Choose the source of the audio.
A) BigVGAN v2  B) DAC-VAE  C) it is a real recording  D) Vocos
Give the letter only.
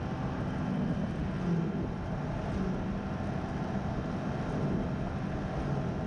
C